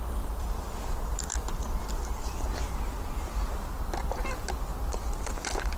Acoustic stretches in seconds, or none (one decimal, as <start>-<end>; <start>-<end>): 0.0-5.8